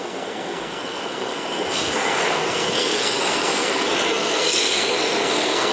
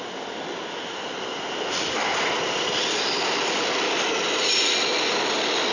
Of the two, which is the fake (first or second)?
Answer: first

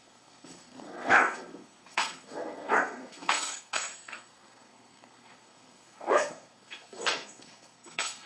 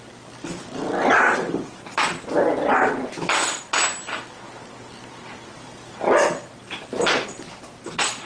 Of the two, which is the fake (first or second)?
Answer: first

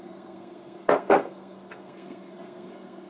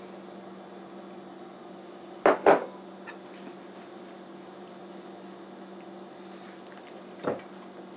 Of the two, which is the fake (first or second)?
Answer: first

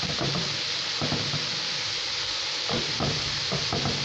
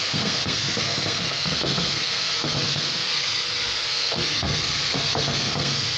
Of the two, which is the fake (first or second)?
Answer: second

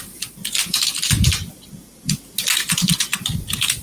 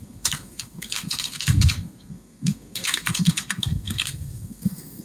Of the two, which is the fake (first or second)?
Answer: second